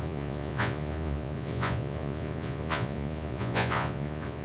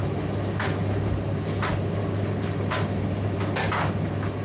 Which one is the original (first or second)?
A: second